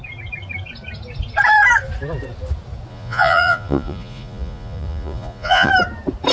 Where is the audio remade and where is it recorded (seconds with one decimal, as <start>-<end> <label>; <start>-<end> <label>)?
0.0-2.9 recorded; 2.9-5.7 remade; 5.7-6.3 recorded